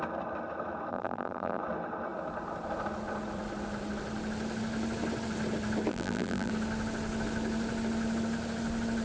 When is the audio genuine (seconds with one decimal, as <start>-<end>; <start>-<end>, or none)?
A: 0.0-0.9; 1.6-5.9; 6.5-9.0